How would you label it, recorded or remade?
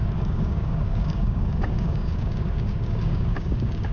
remade